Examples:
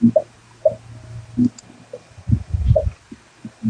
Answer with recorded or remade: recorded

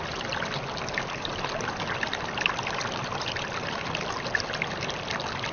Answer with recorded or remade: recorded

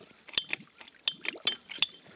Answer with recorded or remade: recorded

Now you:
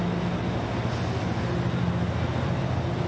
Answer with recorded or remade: recorded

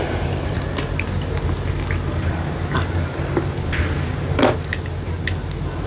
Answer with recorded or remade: recorded